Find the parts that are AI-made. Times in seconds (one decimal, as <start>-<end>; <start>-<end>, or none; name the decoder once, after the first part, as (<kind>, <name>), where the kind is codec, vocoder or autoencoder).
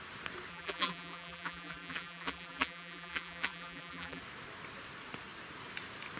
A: 0.5-4.2 (vocoder, BigVGAN v2)